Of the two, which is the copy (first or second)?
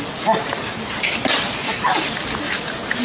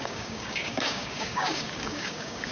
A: second